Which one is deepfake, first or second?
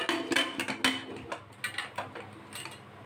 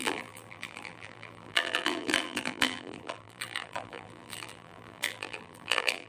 second